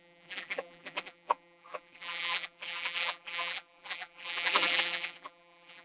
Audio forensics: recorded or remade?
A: remade